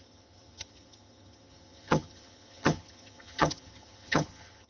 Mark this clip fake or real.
fake